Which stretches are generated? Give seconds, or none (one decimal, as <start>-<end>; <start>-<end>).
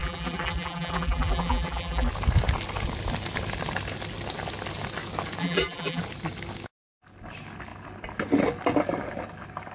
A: 0.0-2.1; 5.4-6.0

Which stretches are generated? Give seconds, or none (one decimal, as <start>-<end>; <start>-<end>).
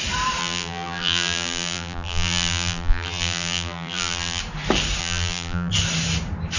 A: 0.4-4.4; 5.0-5.7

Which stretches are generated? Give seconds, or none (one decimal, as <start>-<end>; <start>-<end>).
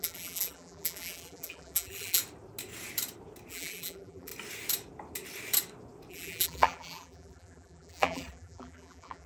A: 0.0-2.2; 3.5-4.3; 6.1-9.3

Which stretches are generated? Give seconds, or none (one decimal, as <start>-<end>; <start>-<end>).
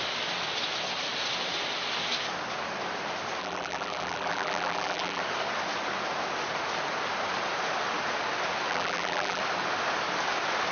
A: 3.4-5.2; 8.7-9.4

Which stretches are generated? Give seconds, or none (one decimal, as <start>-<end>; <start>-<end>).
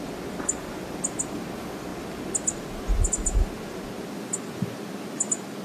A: none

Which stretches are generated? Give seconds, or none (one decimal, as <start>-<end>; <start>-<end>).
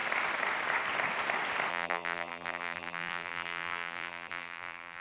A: 1.7-5.0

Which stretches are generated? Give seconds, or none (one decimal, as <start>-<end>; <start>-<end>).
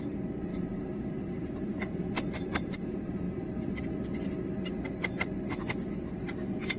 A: 0.5-3.9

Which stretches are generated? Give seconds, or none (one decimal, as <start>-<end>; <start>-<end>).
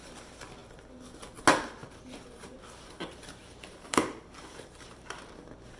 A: 1.8-5.3